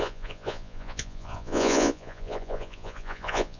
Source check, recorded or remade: remade